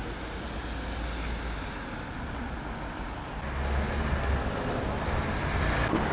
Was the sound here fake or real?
real